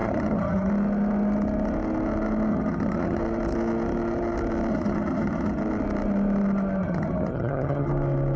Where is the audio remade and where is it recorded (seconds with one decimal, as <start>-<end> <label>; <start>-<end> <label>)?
0.0-0.7 remade; 0.7-2.5 recorded; 2.5-3.2 remade; 3.2-4.7 recorded; 4.7-5.6 remade; 5.6-6.8 recorded; 6.8-7.9 remade; 7.9-8.4 recorded